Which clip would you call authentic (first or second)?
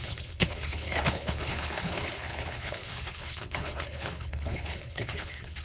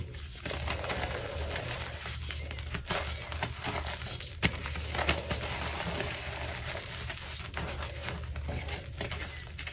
second